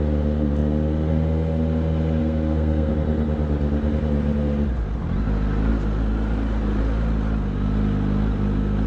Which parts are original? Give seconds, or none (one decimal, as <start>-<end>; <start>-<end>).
0.0-2.2; 2.9-8.9